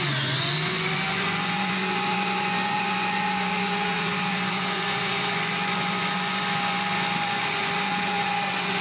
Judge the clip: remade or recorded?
remade